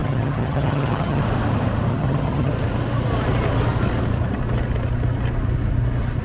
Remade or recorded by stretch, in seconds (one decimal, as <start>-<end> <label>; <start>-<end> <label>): 0.0-1.2 remade; 1.2-1.9 recorded; 1.9-2.5 remade; 2.5-6.2 recorded